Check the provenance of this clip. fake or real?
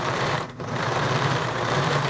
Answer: fake